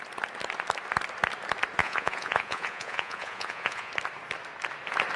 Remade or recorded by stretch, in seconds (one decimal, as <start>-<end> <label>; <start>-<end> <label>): 0.0-1.8 recorded; 1.8-3.9 remade; 3.9-5.2 recorded